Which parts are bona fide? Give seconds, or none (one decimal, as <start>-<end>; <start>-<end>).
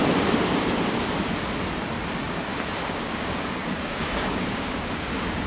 0.0-2.8